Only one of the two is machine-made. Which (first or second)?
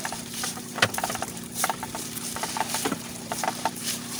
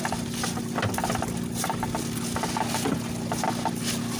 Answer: first